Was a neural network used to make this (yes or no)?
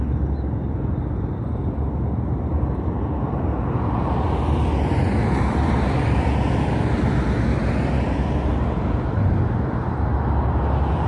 no